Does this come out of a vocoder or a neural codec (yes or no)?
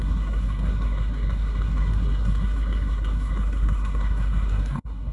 yes